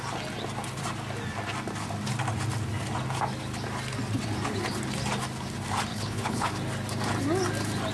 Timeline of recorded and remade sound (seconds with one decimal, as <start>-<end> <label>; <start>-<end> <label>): 0.0-5.9 recorded; 5.9-6.5 remade; 6.5-7.9 recorded